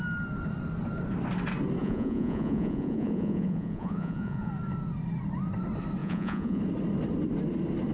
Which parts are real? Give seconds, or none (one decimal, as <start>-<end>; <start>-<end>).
0.0-1.8; 4.5-6.0; 6.6-7.9